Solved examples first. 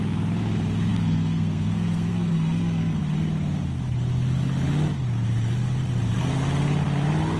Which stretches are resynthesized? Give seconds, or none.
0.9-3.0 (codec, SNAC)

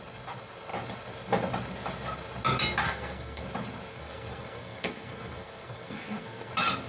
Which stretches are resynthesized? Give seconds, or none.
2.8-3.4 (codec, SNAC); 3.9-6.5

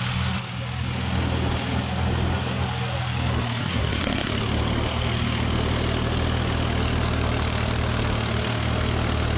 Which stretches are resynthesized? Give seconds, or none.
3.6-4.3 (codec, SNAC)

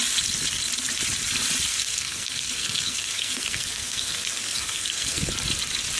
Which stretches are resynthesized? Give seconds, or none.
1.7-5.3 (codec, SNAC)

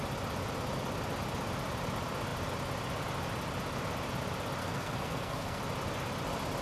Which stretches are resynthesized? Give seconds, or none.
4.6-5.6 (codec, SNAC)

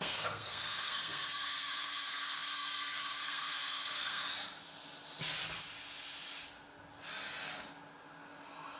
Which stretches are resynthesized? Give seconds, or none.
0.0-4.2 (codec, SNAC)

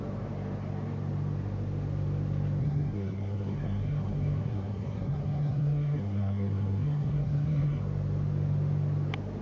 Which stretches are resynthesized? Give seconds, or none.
2.6-7.8 (codec, SNAC)